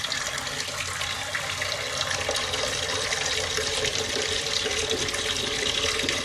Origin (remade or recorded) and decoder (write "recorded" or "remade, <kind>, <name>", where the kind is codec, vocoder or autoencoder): remade, vocoder, BigVGAN v2